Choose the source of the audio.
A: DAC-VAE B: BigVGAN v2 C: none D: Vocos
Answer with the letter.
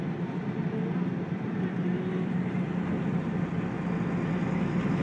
C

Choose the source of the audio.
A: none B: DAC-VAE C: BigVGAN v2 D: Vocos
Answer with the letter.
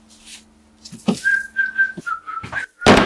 A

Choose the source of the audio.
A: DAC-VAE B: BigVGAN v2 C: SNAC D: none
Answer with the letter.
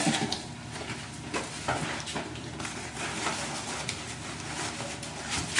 B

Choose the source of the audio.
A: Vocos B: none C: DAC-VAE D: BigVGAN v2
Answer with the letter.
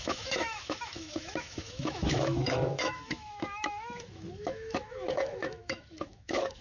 C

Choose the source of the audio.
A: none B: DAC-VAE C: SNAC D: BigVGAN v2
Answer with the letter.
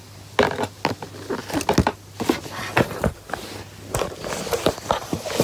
A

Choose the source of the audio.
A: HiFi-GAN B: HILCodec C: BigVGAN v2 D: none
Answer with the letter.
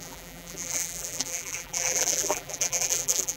C